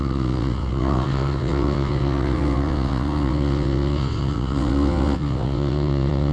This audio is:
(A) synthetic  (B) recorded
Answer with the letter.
A